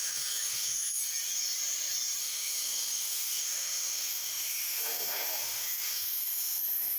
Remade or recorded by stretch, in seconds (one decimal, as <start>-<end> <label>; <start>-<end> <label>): 0.0-1.0 remade; 1.0-2.2 recorded; 2.2-7.0 remade